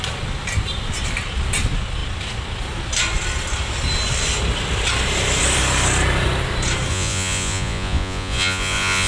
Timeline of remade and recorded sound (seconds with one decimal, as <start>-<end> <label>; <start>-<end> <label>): 0.0-6.9 recorded; 6.9-9.1 remade